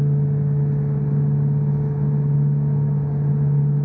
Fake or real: real